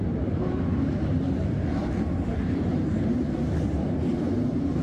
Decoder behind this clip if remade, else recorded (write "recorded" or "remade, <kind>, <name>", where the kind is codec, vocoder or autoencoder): remade, vocoder, BigVGAN v2